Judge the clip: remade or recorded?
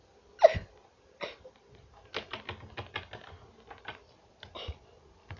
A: recorded